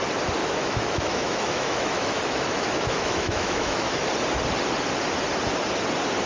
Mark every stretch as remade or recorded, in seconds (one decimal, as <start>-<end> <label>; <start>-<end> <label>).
0.0-0.4 recorded; 0.4-4.1 remade; 4.1-6.3 recorded